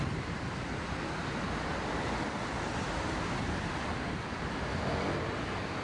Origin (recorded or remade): recorded